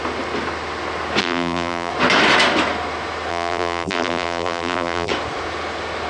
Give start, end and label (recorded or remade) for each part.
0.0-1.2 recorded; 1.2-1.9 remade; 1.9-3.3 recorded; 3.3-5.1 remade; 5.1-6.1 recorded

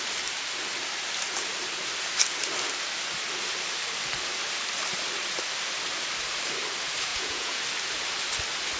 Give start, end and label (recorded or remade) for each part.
0.0-7.1 recorded; 7.1-7.6 remade; 7.6-8.8 recorded